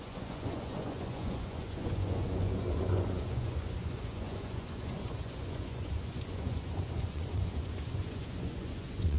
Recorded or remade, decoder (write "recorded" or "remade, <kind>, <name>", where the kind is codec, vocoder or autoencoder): remade, vocoder, Vocos